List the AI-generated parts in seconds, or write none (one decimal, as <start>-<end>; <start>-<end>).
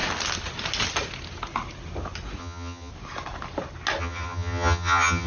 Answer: 2.4-2.9; 4.0-5.3